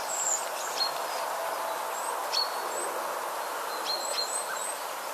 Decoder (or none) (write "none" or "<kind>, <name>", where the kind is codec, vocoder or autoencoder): none